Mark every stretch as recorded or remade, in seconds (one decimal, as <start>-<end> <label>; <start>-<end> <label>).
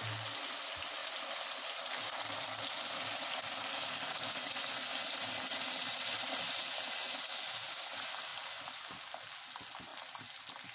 0.0-10.7 recorded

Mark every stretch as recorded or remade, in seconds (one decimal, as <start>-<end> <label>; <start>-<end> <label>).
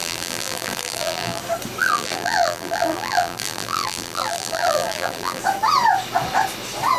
0.0-1.4 remade; 1.4-1.8 recorded; 1.8-5.4 remade; 5.4-7.0 recorded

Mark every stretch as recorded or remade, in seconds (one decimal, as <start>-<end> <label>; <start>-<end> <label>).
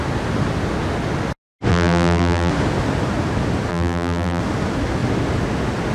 0.0-1.7 recorded; 1.7-2.5 remade; 2.5-3.7 recorded; 3.7-4.4 remade; 4.4-5.9 recorded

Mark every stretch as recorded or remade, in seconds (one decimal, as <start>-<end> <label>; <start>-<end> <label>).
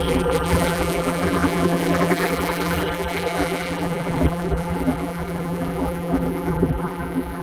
0.0-7.4 remade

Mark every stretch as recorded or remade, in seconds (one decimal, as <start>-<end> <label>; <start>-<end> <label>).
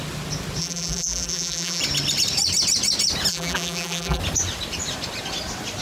0.0-0.6 recorded; 0.6-1.8 remade; 1.8-3.3 recorded; 3.3-4.2 remade; 4.2-5.8 recorded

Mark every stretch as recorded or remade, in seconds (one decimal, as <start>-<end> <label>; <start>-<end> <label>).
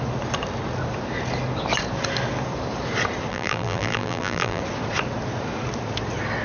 0.0-3.3 recorded; 3.3-4.6 remade; 4.6-6.4 recorded